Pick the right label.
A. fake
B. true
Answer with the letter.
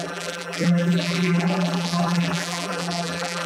A